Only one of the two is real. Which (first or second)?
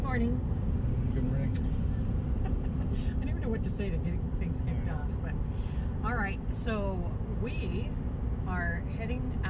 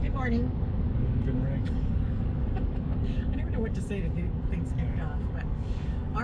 first